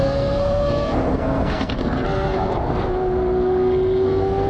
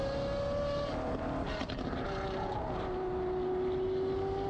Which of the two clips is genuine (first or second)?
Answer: second